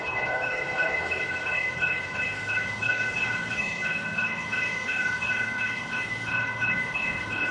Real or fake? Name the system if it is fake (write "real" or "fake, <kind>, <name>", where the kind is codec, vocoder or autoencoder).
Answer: fake, codec, HILCodec